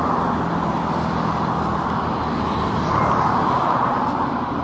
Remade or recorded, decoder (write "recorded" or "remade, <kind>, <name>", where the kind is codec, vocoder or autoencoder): recorded